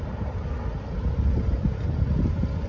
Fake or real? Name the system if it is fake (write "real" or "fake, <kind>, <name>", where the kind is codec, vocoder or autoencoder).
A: real